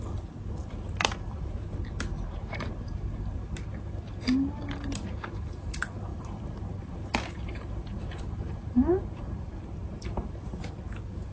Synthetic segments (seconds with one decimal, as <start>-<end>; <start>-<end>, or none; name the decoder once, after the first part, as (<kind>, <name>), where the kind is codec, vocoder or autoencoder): 0.6-1.6 (vocoder, BigVGAN v2); 6.1-10.6